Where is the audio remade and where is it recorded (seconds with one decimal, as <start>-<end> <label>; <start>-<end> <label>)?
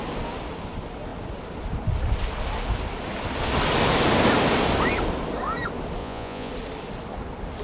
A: 0.0-6.0 recorded; 6.0-6.5 remade; 6.5-7.6 recorded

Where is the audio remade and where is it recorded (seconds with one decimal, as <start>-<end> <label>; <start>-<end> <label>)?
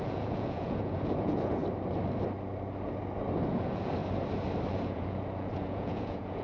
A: 0.0-1.6 remade; 1.6-3.5 recorded; 3.5-4.0 remade; 4.0-4.7 recorded; 4.7-6.4 remade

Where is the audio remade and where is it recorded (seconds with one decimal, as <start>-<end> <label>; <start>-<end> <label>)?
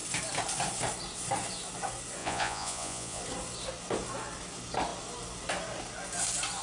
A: 0.0-2.2 recorded; 2.2-3.2 remade; 3.2-6.6 recorded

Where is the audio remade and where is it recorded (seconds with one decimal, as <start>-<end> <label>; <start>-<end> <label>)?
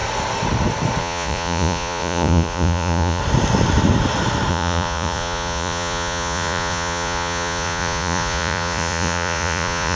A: 0.0-1.0 recorded; 1.0-3.2 remade; 3.2-4.5 recorded; 4.5-10.0 remade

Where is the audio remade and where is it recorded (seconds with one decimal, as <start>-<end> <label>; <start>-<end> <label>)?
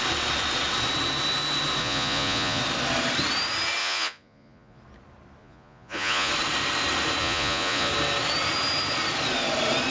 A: 0.0-1.8 recorded; 1.8-2.6 remade; 2.6-3.8 recorded; 3.8-4.8 remade; 4.8-5.4 recorded; 5.4-6.3 remade; 6.3-7.2 recorded; 7.2-7.9 remade; 7.9-9.9 recorded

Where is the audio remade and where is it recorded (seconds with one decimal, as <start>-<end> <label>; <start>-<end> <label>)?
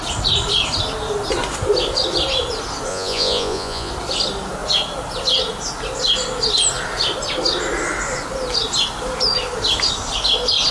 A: 0.0-2.9 recorded; 2.9-3.9 remade; 3.9-10.7 recorded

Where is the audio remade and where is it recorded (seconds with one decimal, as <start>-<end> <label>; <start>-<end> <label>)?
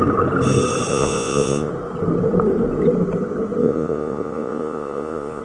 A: 0.0-0.9 recorded; 0.9-1.7 remade; 1.7-3.6 recorded; 3.6-5.4 remade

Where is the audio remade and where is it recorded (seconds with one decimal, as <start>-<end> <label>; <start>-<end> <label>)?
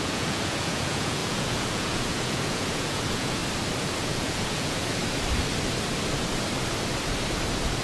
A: 0.0-3.4 remade; 3.4-4.0 recorded; 4.0-5.0 remade; 5.0-7.8 recorded